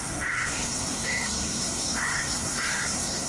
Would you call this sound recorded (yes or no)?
no